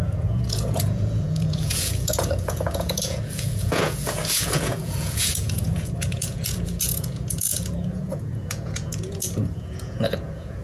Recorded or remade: remade